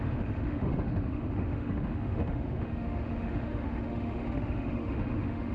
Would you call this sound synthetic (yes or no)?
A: yes